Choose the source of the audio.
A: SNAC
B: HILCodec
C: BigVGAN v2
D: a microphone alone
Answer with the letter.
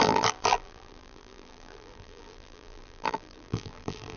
C